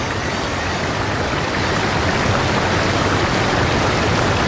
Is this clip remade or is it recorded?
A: recorded